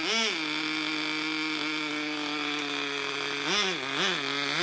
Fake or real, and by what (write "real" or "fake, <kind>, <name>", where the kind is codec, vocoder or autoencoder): real